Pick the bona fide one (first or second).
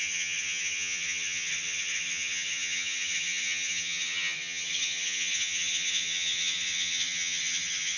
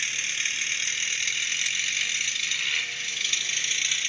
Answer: second